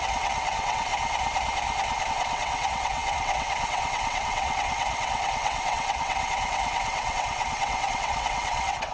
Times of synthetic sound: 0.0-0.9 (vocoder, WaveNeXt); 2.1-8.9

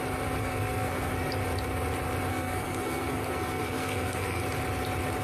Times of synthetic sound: 0.4-1.1 (codec, SNAC); 2.3-4.4

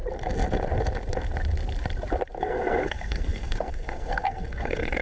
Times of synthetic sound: 2.4-5.0 (codec, SNAC)

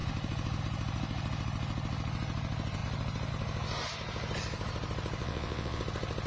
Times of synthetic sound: 5.2-5.8 (vocoder, WaveNeXt)

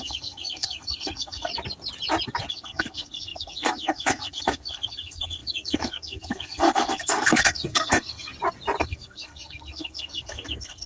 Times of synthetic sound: 0.0-1.5 (codec, SNAC); 2.5-8.3; 8.8-10.9

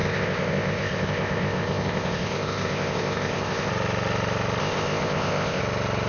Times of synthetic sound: 0.0-3.7 (codec, ZipCodec); 4.6-5.6